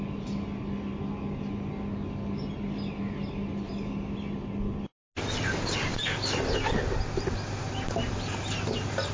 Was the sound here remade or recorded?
recorded